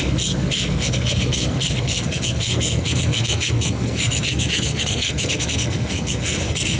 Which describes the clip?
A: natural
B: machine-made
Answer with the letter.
B